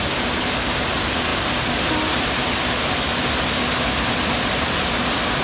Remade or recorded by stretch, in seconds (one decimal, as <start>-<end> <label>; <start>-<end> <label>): 0.0-5.4 recorded